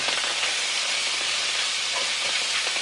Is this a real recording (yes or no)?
yes